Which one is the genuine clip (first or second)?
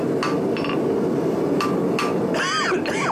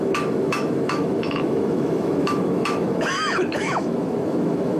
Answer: first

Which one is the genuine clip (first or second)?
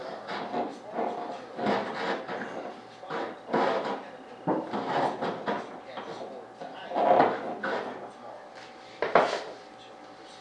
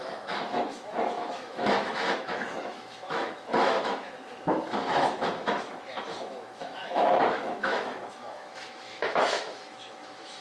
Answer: first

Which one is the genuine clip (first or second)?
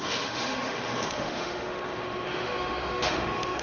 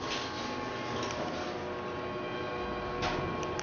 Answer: second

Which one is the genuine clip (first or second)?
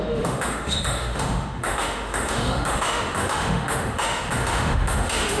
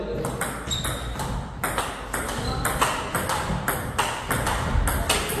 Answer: second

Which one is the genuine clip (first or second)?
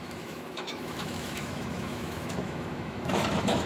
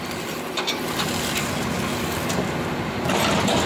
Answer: second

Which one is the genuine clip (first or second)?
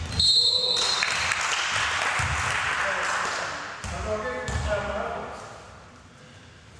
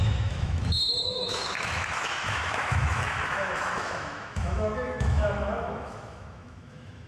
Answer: first